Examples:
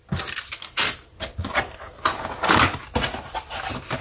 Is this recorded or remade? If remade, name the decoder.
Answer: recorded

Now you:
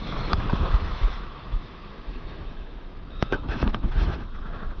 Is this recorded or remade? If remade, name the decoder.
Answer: remade, autoencoder, DAC-VAE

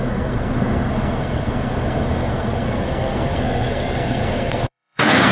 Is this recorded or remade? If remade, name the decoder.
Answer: remade, codec, SNAC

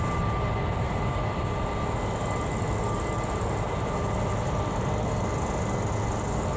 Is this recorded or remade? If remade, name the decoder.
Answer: recorded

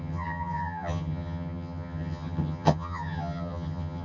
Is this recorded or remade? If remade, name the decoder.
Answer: remade, vocoder, HiFi-GAN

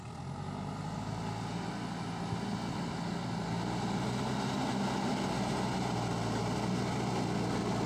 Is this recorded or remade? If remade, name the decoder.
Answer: recorded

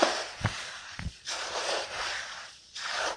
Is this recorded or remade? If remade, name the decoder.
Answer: remade, vocoder, Vocos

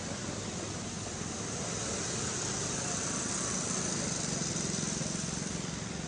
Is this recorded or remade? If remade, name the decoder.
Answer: recorded